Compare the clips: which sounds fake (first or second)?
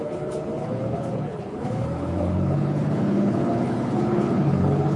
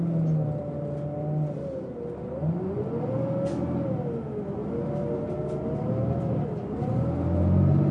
first